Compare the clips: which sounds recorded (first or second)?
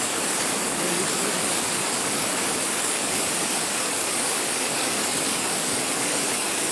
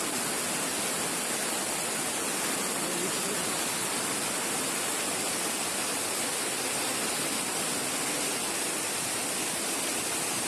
second